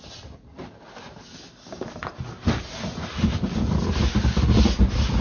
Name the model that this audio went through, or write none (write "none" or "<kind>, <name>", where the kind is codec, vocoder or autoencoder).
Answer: none